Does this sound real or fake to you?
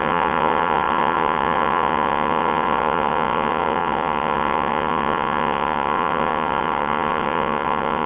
fake